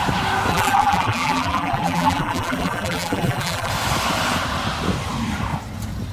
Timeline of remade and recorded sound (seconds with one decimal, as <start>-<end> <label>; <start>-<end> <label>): 0.0-0.5 recorded; 0.5-3.7 remade; 3.7-6.1 recorded